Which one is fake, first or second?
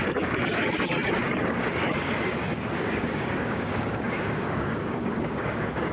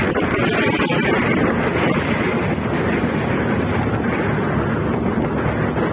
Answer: first